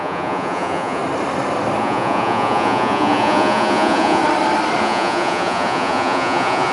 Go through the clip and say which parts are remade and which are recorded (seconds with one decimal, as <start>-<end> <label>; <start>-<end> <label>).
0.0-1.0 remade; 1.0-1.8 recorded; 1.8-4.2 remade; 4.2-4.8 recorded; 4.8-6.7 remade